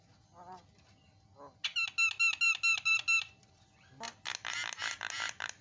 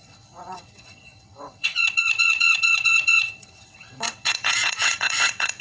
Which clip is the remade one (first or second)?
second